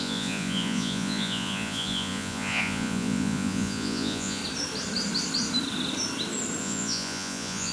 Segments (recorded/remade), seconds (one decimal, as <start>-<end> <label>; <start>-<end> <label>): 0.0-4.4 remade; 4.4-6.6 recorded; 6.6-7.7 remade